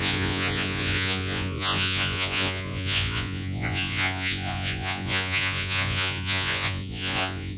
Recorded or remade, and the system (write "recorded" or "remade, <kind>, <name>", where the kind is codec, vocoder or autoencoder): remade, vocoder, Vocos